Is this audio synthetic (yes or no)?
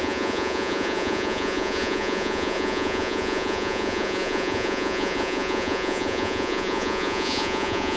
yes